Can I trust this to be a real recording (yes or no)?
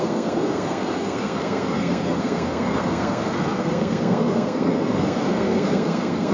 no